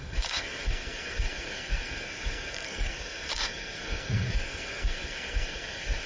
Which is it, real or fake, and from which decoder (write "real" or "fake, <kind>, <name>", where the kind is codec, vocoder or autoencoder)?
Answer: fake, codec, SNAC